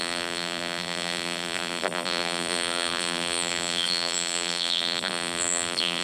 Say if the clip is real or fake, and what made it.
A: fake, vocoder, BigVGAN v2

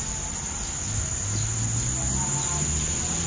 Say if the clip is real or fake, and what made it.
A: real